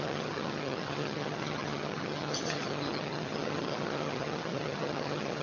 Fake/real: fake